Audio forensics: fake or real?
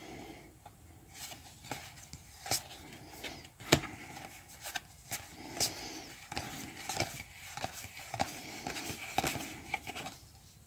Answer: real